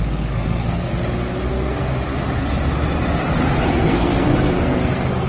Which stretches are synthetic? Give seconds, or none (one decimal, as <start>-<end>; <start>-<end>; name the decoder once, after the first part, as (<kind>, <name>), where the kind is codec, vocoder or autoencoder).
0.0-0.9 (codec, SNAC); 1.5-1.9; 3.7-5.3